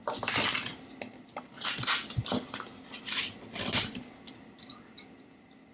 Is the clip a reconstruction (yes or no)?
no